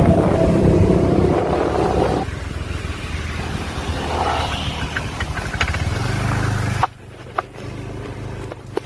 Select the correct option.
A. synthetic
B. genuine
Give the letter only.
B